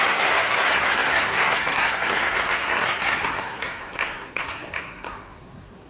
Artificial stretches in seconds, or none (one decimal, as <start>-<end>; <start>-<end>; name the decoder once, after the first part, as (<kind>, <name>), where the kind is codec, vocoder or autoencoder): 0.0-5.9 (codec, SNAC)